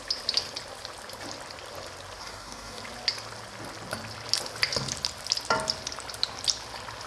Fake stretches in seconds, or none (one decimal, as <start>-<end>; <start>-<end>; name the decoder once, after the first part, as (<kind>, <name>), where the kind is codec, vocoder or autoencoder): 2.2-2.8 (codec, DAC)